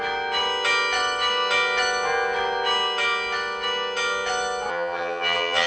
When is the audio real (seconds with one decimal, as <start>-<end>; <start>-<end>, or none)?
0.0-4.7

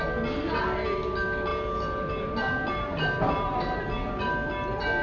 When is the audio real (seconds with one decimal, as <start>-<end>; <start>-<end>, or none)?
0.0-5.0

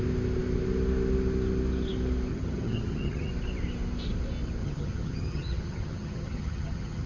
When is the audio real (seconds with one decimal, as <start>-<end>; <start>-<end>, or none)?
0.0-2.3; 3.3-4.6

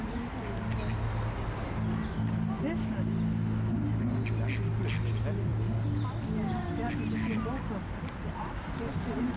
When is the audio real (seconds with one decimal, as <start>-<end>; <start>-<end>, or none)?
0.0-9.4

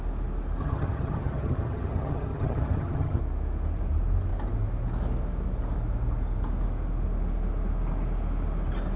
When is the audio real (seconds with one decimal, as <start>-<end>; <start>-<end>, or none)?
0.0-0.6; 3.2-9.0

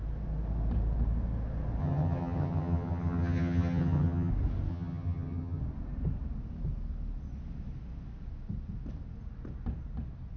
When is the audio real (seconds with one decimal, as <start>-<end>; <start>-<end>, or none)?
0.0-1.8; 4.3-4.7; 5.6-10.4

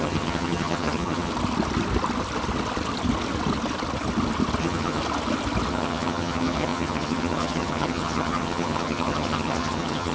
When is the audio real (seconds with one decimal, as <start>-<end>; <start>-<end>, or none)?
1.3-4.6; 5.0-5.7